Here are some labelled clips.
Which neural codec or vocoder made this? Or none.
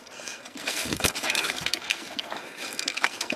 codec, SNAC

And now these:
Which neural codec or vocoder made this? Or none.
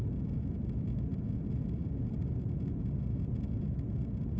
none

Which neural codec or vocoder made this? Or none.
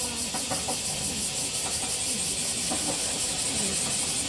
none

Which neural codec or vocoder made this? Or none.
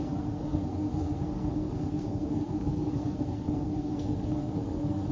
codec, SNAC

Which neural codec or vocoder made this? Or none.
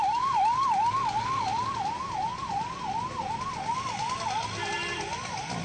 none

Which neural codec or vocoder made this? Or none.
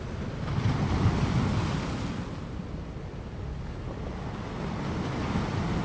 none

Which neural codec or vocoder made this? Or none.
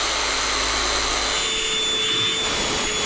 none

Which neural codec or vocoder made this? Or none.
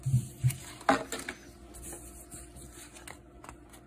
none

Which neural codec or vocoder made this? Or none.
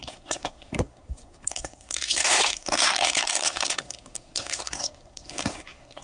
codec, SNAC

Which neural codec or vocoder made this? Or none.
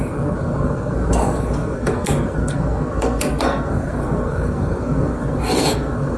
codec, SNAC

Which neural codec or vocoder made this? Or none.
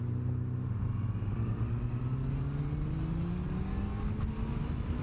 none